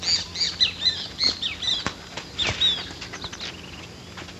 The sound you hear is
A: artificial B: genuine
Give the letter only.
B